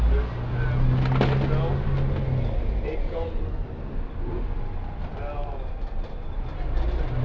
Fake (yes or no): no